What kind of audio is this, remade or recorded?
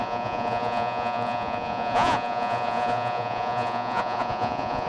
remade